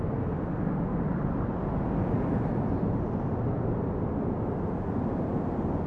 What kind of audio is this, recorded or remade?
recorded